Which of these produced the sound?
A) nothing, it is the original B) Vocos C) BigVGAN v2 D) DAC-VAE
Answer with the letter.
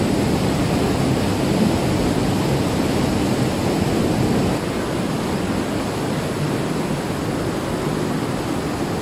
A